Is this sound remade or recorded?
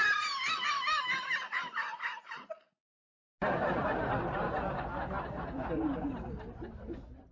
recorded